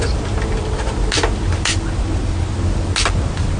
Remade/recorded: recorded